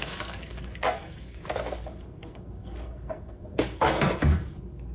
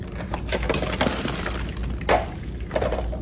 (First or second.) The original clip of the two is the second